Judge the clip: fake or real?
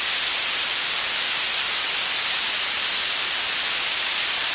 real